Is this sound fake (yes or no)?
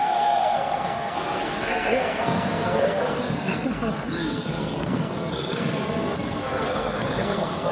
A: yes